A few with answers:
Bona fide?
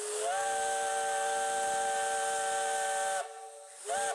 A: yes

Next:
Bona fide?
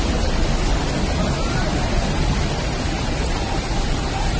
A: yes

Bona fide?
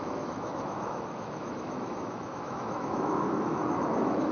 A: no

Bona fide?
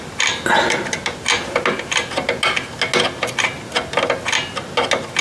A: yes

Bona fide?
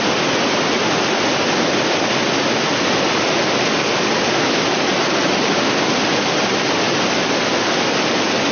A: yes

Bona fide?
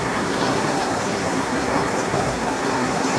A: no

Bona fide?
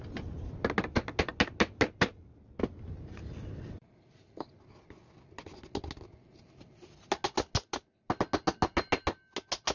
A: yes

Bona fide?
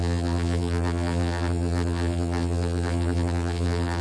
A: no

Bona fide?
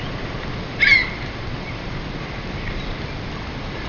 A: yes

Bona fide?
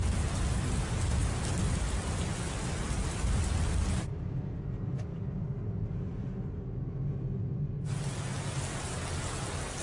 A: yes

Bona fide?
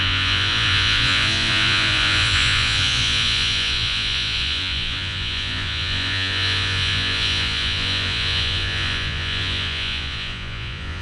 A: no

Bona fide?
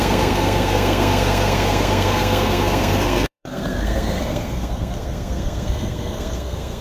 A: no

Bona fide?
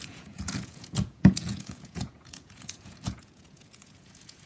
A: no